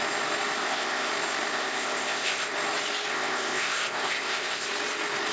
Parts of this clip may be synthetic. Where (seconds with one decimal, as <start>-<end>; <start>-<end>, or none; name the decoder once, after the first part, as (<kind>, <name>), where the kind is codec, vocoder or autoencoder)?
0.6-1.1 (codec, ZipCodec); 1.5-2.5; 3.1-4.7